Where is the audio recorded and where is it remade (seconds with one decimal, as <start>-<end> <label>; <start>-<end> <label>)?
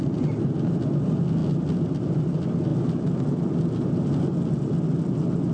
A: 0.0-5.5 recorded